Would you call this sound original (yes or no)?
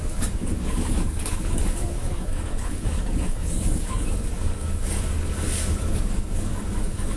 no